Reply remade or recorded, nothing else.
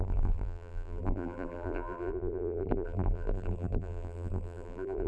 remade